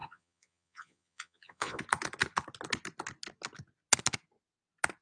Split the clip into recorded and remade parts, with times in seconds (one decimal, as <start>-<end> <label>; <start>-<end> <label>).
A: 0.0-1.8 remade; 1.8-5.0 recorded